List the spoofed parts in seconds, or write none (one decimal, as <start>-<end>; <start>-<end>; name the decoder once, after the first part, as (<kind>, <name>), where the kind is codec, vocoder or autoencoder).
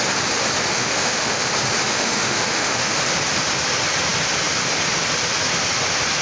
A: 0.7-1.5 (autoencoder, DAC-VAE); 1.9-3.0